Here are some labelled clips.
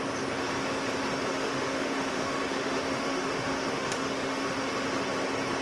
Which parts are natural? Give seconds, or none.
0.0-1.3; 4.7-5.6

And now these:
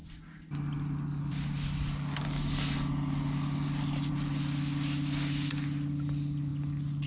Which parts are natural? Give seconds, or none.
0.0-7.1

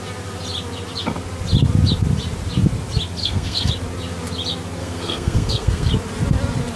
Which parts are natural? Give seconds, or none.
0.0-3.2; 3.7-4.8; 5.9-6.8

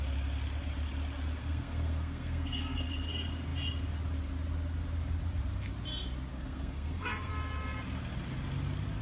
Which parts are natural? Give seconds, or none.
0.0-1.4; 3.1-6.3; 7.3-9.0